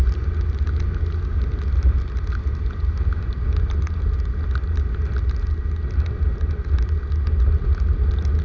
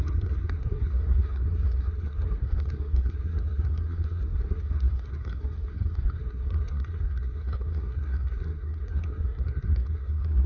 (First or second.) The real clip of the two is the first